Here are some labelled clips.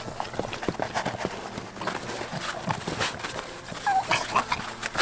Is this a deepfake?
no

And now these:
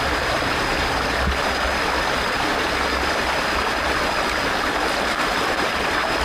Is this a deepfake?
no